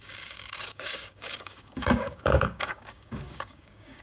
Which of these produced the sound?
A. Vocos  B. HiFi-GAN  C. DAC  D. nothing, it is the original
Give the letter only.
C